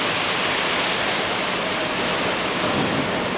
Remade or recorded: recorded